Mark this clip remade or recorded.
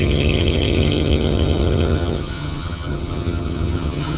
remade